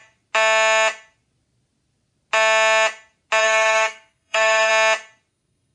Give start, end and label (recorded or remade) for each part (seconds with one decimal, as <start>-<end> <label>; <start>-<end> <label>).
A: 0.0-3.4 recorded; 3.4-4.7 remade; 4.7-5.3 recorded; 5.3-5.7 remade